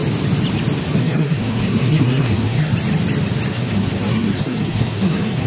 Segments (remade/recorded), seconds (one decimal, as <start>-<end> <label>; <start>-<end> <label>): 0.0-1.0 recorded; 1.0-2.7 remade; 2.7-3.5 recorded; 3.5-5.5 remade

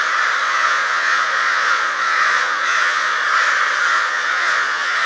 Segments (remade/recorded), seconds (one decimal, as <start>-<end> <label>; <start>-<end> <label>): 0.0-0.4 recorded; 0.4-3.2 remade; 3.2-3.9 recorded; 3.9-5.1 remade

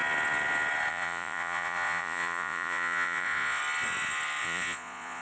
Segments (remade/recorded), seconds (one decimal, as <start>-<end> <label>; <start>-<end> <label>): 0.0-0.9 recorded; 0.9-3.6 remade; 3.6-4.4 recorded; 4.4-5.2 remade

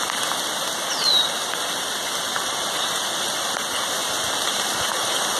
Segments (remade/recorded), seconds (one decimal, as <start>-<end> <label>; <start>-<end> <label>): 0.0-4.0 recorded; 4.0-4.8 remade; 4.8-5.4 recorded